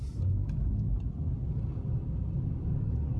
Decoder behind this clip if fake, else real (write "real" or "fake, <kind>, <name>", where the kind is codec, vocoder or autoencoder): real